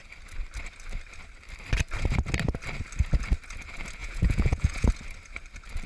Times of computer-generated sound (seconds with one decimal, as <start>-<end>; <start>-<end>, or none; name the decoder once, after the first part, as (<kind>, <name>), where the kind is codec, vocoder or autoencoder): 4.0-4.9 (vocoder, Vocos)